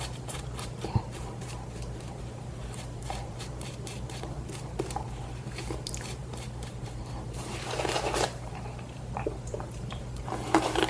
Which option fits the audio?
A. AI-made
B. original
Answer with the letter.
A